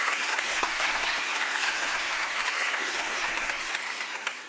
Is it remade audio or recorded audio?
remade